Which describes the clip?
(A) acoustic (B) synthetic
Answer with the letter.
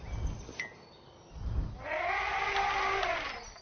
A